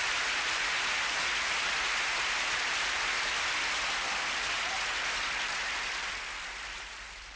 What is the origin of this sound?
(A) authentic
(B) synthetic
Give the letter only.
A